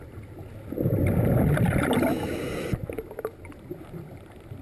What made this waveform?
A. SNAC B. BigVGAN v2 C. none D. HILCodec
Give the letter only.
C